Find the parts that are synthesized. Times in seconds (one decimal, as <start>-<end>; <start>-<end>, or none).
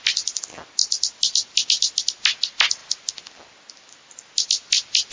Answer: none